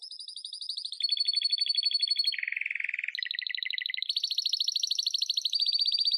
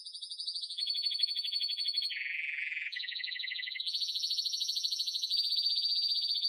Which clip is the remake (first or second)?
second